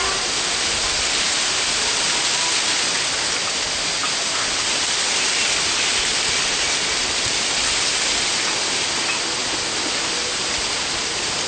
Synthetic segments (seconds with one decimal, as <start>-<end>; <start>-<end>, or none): none